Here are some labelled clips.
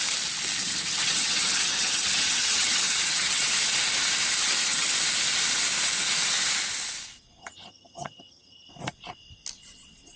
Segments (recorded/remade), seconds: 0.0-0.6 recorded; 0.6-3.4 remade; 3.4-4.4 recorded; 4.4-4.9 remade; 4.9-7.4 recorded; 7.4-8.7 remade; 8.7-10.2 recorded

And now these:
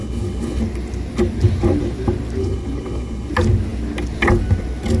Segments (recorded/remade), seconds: 0.0-0.6 remade; 0.6-2.4 recorded; 2.4-3.3 remade; 3.3-5.0 recorded

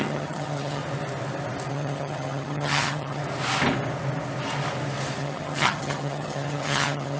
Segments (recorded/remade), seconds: 0.0-0.8 remade; 0.8-1.7 recorded; 1.7-3.2 remade; 3.2-5.2 recorded; 5.2-7.2 remade

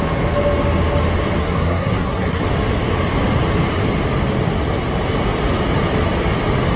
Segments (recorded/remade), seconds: 0.0-1.4 recorded; 1.4-2.4 remade; 2.4-6.8 recorded

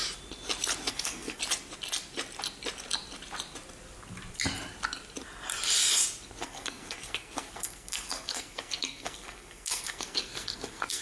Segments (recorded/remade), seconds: 0.0-0.9 recorded; 0.9-1.4 remade; 1.4-6.4 recorded; 6.4-11.0 remade